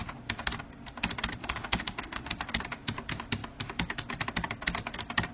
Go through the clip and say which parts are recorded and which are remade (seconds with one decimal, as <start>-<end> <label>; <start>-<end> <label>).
0.0-1.4 recorded; 1.4-2.3 remade; 2.3-5.3 recorded